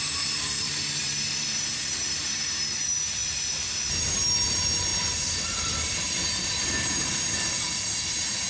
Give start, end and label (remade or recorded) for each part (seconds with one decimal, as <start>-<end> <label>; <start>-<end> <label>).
0.0-4.9 remade; 4.9-5.8 recorded; 5.8-8.5 remade